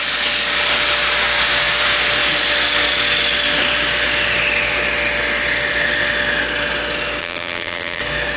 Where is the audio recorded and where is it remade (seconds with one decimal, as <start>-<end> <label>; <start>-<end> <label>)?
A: 0.0-7.2 recorded; 7.2-8.0 remade; 8.0-8.4 recorded